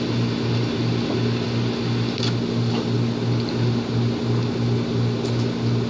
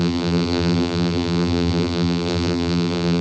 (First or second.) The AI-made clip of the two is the second